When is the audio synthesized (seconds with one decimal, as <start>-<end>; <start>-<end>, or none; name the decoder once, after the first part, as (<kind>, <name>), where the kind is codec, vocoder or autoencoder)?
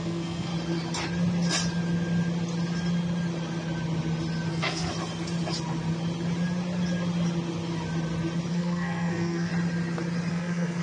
0.0-0.5 (codec, SNAC); 4.5-4.9; 8.5-9.5; 10.3-10.8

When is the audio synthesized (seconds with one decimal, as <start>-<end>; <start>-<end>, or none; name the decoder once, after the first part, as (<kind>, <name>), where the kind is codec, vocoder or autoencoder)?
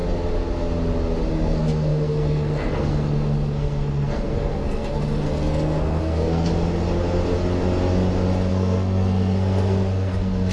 1.3-6.5 (codec, SNAC); 8.5-10.5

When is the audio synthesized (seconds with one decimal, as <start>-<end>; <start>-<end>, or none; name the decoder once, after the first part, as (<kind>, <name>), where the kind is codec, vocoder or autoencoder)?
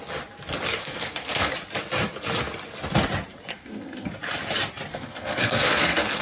0.8-1.5 (codec, SNAC); 3.5-4.1; 4.9-6.2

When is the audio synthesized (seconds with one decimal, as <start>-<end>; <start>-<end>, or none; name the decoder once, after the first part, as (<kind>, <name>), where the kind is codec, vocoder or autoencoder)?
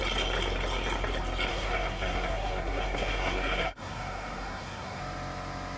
1.5-5.0 (codec, SNAC)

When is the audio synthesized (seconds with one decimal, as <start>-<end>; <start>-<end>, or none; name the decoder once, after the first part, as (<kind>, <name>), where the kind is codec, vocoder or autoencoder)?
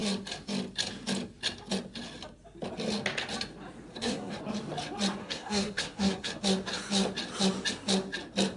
3.9-4.4 (codec, SNAC); 5.2-6.3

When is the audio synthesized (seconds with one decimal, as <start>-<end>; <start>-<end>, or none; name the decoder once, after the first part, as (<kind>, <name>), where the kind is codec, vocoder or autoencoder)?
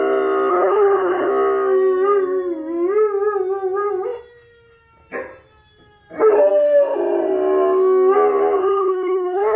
0.5-1.3 (codec, SNAC); 8.6-9.6